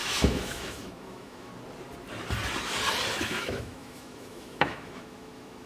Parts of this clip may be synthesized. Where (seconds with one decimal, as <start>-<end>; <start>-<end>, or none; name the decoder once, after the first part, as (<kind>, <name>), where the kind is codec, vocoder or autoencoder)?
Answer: 0.0-1.5 (autoencoder, DAC-VAE); 3.2-5.7